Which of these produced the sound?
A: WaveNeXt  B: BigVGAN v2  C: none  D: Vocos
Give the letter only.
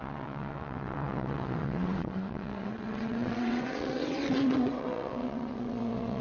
A